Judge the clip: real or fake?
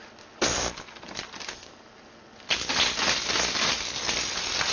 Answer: real